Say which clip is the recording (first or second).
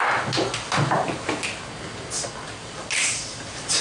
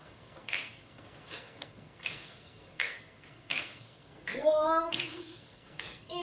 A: first